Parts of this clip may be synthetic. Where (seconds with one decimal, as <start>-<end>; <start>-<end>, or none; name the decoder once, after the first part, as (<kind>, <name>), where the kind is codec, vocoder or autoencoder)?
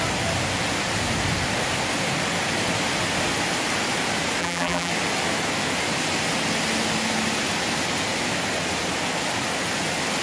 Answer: 4.4-4.9 (vocoder, BigVGAN v2)